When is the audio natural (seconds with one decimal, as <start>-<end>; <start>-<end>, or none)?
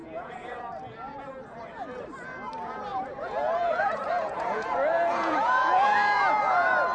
0.6-2.9; 6.2-6.9